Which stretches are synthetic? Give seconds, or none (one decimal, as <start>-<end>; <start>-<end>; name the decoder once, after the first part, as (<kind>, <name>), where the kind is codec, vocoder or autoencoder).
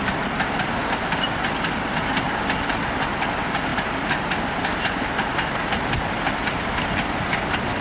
none